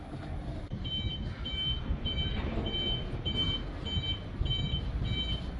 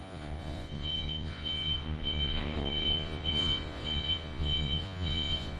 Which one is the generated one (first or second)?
second